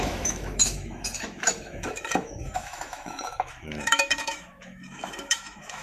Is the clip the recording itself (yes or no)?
no